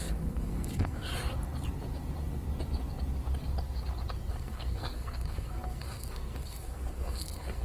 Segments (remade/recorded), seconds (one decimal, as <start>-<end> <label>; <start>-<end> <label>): 0.0-1.1 remade; 1.1-4.3 recorded; 4.3-7.6 remade